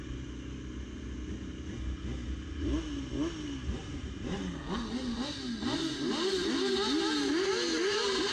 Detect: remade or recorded recorded